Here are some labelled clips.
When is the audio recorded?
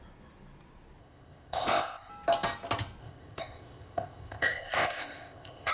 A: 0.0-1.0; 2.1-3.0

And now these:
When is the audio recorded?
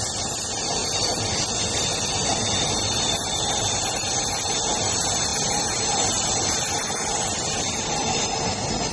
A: 0.0-8.9